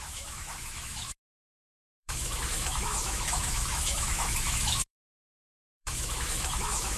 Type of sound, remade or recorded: remade